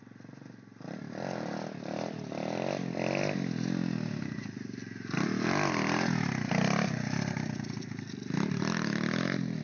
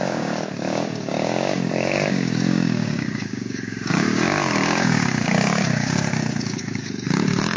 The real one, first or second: first